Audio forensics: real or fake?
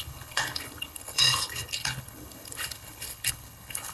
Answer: fake